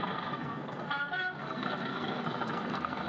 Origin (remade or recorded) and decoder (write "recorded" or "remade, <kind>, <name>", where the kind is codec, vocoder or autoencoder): remade, codec, SNAC